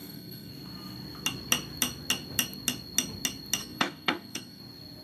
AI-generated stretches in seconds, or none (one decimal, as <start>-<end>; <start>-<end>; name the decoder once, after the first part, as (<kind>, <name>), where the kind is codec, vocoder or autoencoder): 0.0-0.5 (codec, SNAC); 3.6-4.6